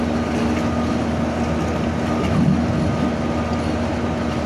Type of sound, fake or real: real